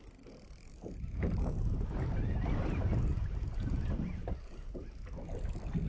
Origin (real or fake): real